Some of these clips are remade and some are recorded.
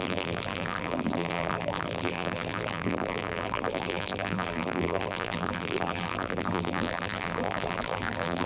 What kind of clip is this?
remade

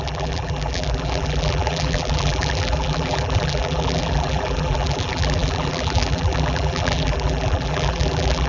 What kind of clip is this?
remade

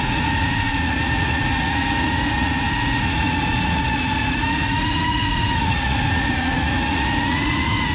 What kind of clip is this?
remade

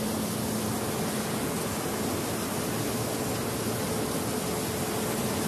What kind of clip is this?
recorded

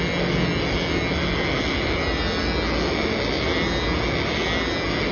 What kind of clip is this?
recorded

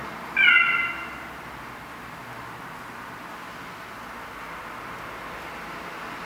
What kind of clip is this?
remade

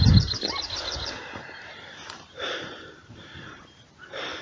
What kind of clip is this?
remade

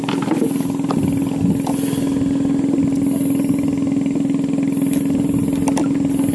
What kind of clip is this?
recorded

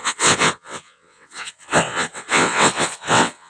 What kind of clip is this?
remade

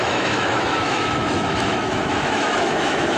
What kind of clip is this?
remade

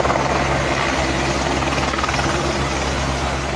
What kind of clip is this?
recorded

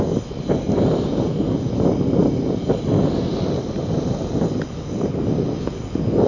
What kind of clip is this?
recorded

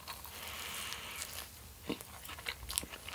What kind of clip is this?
recorded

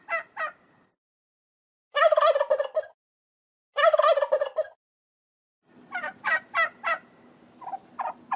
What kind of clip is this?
recorded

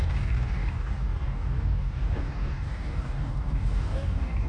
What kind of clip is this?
remade